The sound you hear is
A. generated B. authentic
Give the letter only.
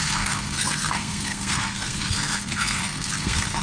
A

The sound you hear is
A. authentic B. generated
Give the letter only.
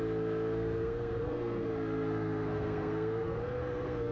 B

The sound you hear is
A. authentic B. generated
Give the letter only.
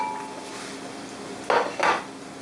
A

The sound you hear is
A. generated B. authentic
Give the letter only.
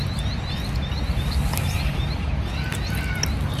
B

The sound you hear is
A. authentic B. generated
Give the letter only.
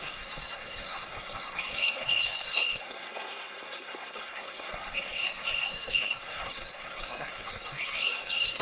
B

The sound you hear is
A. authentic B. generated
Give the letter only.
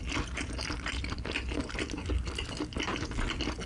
A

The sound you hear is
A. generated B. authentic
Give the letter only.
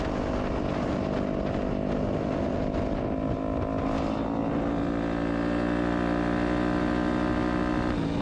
B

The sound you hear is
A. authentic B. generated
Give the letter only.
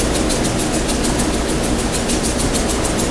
A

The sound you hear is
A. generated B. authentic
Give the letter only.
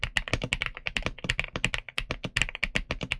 B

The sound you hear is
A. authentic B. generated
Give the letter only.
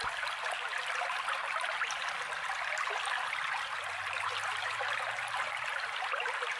A